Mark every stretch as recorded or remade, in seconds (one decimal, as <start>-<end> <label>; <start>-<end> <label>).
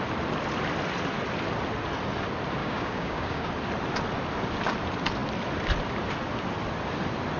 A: 0.0-2.6 recorded; 2.6-3.5 remade; 3.5-7.4 recorded